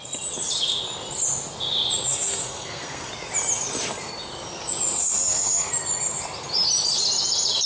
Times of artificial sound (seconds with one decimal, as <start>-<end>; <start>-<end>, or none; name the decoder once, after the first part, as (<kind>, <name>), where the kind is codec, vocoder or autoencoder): 2.1-3.1 (codec, SNAC); 5.0-5.7